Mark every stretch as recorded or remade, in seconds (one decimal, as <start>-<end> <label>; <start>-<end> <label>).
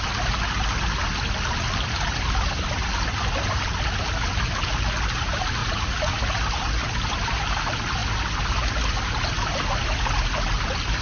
0.0-5.6 recorded; 5.6-6.2 remade; 6.2-11.0 recorded